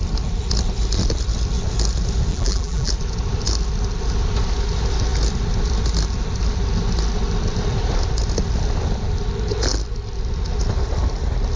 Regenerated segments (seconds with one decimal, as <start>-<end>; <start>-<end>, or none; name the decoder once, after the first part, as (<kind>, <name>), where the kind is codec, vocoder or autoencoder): 2.3-2.9 (vocoder, BigVGAN v2)